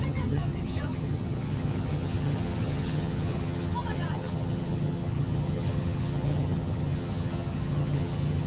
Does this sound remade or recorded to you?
remade